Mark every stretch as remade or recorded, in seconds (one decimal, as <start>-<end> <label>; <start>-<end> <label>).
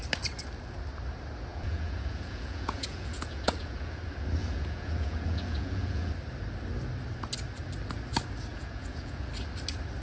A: 0.0-1.5 recorded; 1.5-4.0 remade; 4.0-4.4 recorded; 4.4-6.1 remade; 6.1-8.5 recorded; 8.5-9.3 remade; 9.3-10.0 recorded